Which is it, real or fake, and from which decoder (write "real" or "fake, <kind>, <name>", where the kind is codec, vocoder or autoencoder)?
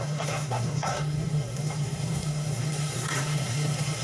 fake, codec, SNAC